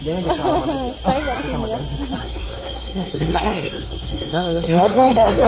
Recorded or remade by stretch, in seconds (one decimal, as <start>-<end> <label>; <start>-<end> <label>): 0.0-2.2 recorded; 2.2-5.5 remade